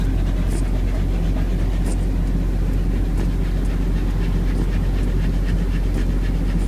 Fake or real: real